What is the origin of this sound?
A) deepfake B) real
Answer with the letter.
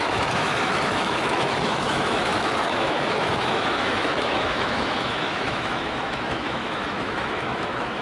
A